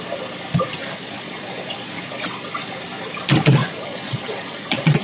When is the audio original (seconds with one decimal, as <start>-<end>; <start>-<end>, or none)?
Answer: 0.0-0.8; 2.7-3.6